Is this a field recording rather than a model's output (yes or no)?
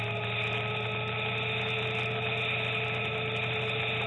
yes